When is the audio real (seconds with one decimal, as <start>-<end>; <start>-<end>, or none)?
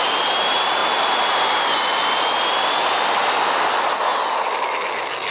0.0-5.3